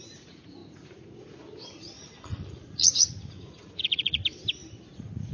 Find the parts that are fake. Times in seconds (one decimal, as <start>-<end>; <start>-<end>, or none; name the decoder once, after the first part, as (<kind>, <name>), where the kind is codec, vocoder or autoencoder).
0.0-4.2 (vocoder, Vocos); 4.8-5.3